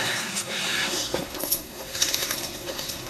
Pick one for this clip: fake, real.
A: fake